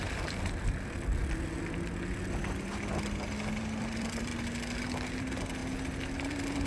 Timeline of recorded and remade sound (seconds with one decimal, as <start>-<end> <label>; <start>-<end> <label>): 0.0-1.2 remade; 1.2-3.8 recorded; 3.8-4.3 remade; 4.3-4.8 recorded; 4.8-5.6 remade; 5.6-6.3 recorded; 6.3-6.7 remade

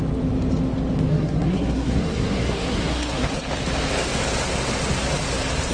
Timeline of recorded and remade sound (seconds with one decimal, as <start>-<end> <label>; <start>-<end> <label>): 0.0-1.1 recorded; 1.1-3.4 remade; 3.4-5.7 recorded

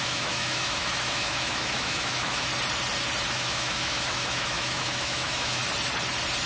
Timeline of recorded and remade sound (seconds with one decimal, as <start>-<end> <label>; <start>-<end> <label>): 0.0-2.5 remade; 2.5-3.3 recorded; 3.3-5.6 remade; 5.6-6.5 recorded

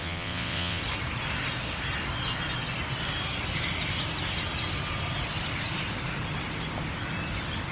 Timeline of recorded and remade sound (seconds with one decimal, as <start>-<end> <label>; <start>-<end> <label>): 0.0-0.8 remade; 0.8-7.7 recorded

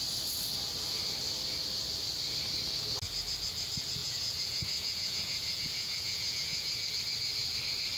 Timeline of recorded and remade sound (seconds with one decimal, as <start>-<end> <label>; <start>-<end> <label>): 0.0-4.0 recorded; 4.0-6.9 remade; 6.9-8.0 recorded

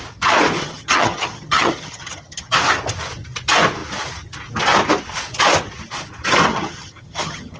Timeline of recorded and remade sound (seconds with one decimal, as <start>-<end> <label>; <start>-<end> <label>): 0.0-0.6 recorded; 0.6-2.5 remade; 2.5-6.5 recorded; 6.5-7.6 remade

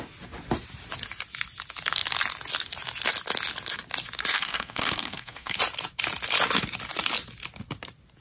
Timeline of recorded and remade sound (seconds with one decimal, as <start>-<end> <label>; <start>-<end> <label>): 0.0-4.3 recorded; 4.3-5.6 remade; 5.6-8.2 recorded

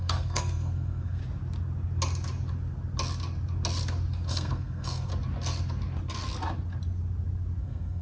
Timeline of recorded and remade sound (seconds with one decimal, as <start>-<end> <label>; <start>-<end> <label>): 0.0-1.2 remade; 1.2-4.3 recorded; 4.3-5.1 remade; 5.1-7.6 recorded; 7.6-8.0 remade